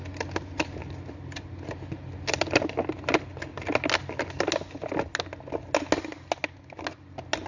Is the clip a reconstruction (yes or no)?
no